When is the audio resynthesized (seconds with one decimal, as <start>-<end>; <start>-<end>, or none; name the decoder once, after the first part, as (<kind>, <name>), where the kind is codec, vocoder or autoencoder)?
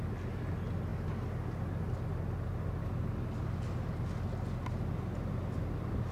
none